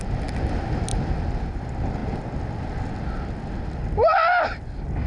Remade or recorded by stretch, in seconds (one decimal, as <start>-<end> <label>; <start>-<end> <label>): 0.0-3.8 recorded; 3.8-4.3 remade; 4.3-5.1 recorded